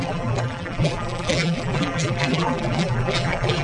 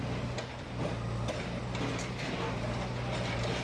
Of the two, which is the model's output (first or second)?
first